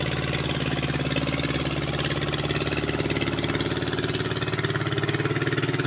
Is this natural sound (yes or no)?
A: yes